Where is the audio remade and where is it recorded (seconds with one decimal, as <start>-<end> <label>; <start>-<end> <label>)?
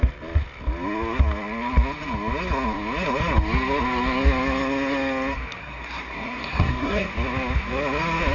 0.0-5.6 recorded; 5.6-7.1 remade; 7.1-8.3 recorded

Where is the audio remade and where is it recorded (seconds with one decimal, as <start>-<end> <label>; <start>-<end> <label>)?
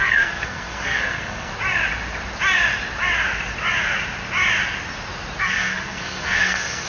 0.0-1.5 remade; 1.5-5.4 recorded; 5.4-6.9 remade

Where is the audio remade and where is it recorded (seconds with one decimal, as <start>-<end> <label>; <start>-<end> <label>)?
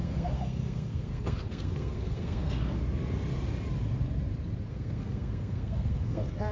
0.0-2.8 remade; 2.8-4.7 recorded; 4.7-6.5 remade